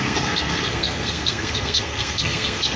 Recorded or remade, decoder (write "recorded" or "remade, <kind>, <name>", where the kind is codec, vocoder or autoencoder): remade, codec, SNAC